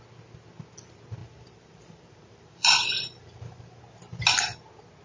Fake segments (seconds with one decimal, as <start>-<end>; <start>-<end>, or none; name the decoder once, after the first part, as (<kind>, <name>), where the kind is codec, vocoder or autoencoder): 1.2-4.2 (vocoder, BigVGAN v2)